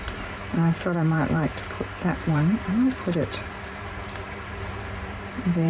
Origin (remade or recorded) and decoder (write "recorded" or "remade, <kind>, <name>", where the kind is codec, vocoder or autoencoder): remade, vocoder, BigVGAN v2